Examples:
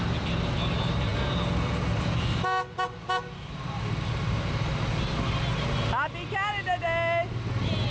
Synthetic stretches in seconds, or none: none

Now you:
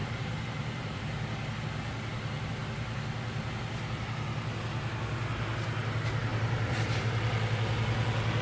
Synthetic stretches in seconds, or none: 0.0-1.0; 6.3-7.0